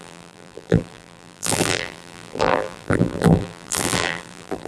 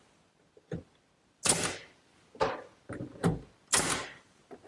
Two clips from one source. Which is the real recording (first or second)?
second